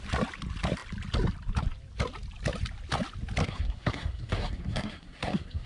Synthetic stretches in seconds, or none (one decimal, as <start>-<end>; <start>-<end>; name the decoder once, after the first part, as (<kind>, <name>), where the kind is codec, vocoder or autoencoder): 3.4-5.7 (codec, SNAC)